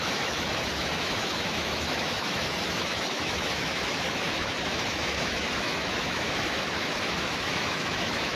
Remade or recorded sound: remade